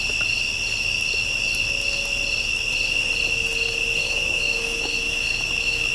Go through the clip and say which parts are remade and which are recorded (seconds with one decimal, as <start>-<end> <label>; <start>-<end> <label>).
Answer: 0.0-4.0 recorded; 4.0-5.9 remade